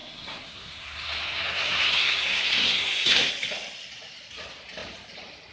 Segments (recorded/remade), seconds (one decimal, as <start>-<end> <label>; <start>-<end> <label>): 0.0-3.3 remade; 3.3-5.5 recorded